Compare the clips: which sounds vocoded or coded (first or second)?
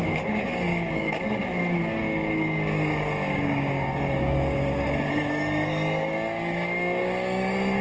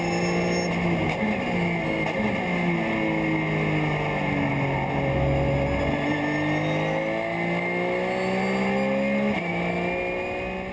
first